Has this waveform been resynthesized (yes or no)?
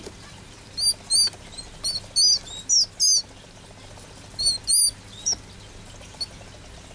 no